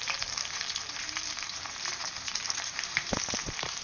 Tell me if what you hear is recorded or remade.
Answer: remade